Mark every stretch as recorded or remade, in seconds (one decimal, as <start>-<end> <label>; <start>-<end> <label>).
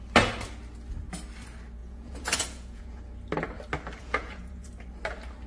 0.0-1.8 recorded; 1.8-3.0 remade; 3.0-4.0 recorded; 4.0-4.7 remade; 4.7-5.5 recorded